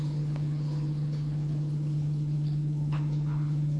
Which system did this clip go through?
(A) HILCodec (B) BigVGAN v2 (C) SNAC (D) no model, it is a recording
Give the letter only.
A